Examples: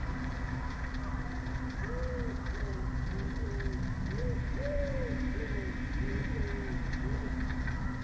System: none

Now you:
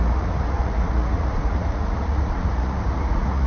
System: vocoder, Vocos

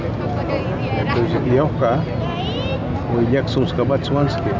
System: none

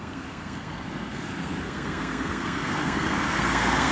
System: codec, SNAC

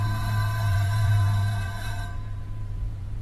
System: vocoder, Vocos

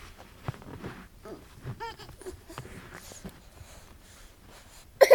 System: vocoder, BigVGAN v2